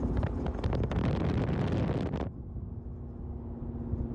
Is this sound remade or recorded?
recorded